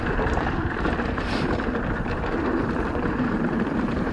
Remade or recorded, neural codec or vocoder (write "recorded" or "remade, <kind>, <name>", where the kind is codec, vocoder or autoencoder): remade, vocoder, BigVGAN v2